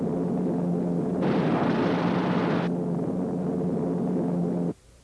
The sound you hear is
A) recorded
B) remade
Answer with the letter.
A